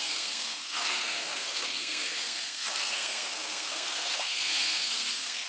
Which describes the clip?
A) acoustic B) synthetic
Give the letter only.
B